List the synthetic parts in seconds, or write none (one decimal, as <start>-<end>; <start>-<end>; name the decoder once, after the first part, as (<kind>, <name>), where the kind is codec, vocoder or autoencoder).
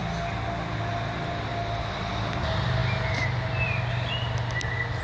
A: none